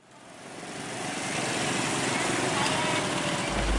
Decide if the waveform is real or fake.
real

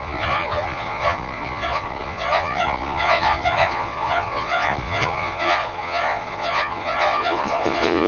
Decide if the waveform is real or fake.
fake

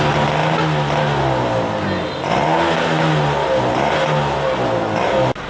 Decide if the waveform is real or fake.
real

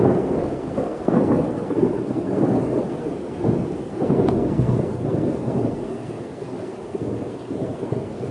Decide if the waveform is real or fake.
fake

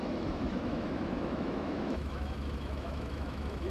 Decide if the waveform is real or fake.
fake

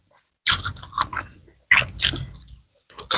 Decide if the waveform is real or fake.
real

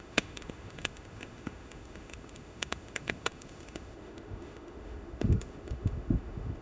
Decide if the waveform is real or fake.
fake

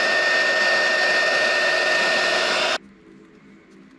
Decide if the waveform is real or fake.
real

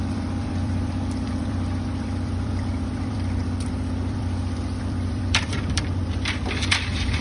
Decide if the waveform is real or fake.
fake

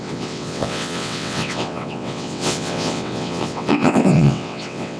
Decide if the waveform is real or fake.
fake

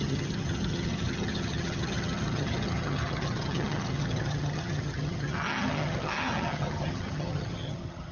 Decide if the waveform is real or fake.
fake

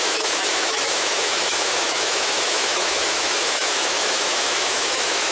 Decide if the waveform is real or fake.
fake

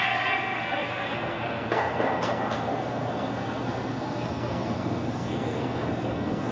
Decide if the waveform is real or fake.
fake